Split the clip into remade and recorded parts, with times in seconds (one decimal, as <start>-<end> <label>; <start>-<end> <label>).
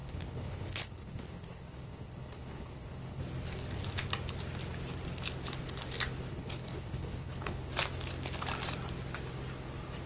0.0-3.2 remade; 3.2-6.3 recorded; 6.3-7.7 remade; 7.7-10.1 recorded